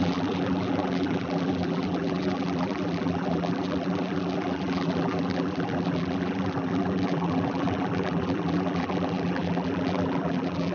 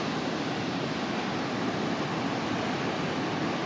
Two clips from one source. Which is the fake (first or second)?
first